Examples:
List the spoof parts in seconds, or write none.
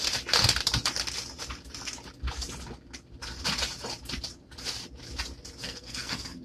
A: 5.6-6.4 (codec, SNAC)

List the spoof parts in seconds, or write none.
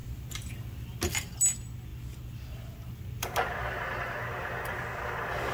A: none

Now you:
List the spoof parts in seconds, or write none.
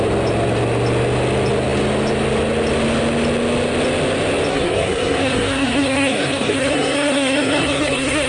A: 4.5-8.3 (codec, SNAC)